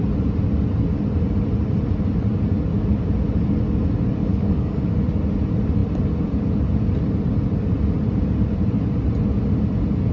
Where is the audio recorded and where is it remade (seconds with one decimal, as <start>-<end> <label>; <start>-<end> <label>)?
0.0-4.2 recorded; 4.2-4.8 remade; 4.8-10.1 recorded